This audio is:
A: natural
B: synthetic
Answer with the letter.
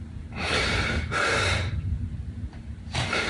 B